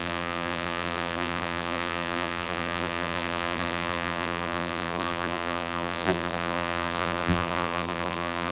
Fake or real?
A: fake